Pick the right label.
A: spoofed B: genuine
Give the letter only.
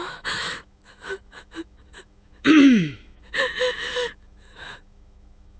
A